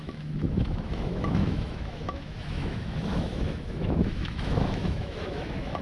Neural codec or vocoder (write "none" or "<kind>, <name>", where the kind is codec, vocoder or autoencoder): autoencoder, DAC-VAE